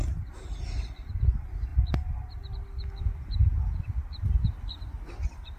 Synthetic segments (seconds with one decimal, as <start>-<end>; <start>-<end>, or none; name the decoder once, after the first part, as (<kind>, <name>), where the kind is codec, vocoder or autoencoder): none